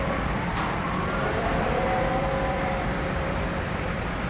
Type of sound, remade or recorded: remade